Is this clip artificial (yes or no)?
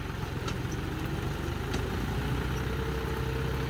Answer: no